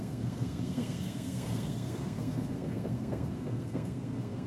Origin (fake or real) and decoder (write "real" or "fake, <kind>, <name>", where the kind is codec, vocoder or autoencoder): fake, codec, SNAC